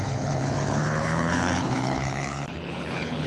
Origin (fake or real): fake